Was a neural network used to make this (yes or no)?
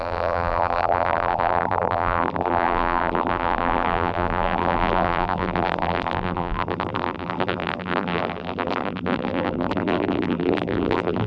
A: yes